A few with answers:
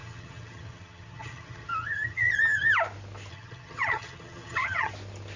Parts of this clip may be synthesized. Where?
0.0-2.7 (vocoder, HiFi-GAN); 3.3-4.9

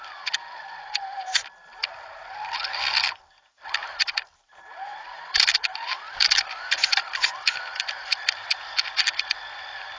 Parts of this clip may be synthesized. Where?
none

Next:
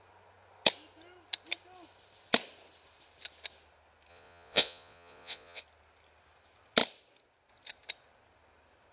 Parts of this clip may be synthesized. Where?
4.1-5.6 (vocoder, Vocos)

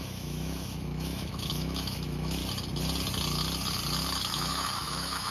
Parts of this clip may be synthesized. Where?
0.0-2.4 (autoencoder, DAC-VAE); 4.2-5.3